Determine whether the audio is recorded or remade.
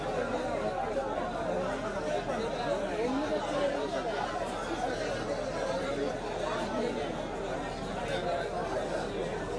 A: recorded